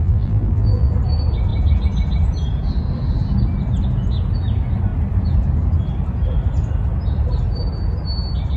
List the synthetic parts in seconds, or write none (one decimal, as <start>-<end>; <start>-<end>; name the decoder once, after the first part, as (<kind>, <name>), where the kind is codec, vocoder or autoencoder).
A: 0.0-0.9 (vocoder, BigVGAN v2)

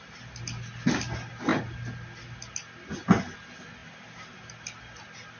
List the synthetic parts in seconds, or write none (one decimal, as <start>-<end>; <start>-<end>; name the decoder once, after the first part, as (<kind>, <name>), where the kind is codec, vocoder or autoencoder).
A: 3.8-4.5 (vocoder, BigVGAN v2)

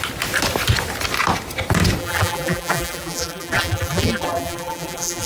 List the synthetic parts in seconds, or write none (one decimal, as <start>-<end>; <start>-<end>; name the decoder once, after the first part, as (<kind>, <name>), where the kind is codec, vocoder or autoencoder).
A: 2.0-5.3 (vocoder, BigVGAN v2)

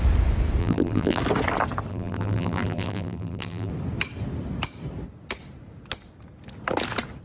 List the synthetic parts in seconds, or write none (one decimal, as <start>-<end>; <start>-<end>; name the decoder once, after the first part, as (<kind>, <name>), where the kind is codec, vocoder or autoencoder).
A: 0.6-1.2 (vocoder, BigVGAN v2); 1.9-3.7

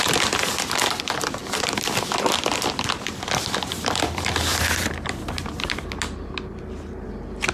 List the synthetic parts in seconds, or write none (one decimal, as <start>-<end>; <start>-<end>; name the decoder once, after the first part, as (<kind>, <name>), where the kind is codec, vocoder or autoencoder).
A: 1.4-5.9 (vocoder, BigVGAN v2)

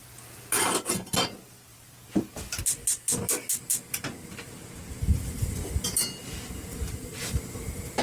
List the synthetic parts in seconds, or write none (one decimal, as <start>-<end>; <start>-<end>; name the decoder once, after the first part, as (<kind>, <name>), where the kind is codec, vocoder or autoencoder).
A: 1.7-2.6 (vocoder, BigVGAN v2); 6.2-8.0

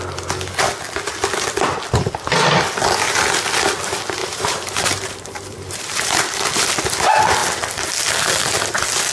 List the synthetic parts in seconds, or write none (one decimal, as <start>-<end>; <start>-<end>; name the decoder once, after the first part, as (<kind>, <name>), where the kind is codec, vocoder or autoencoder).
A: 4.2-6.0 (vocoder, BigVGAN v2)